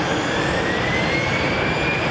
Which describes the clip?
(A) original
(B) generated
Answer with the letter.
A